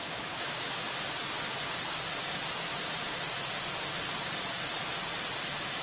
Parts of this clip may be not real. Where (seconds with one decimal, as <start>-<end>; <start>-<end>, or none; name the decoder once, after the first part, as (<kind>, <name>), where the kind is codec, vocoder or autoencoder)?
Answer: 0.0-0.9 (autoencoder, DAC-VAE)